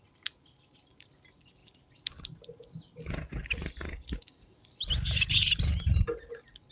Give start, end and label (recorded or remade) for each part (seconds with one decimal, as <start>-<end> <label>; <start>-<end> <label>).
0.0-6.7 recorded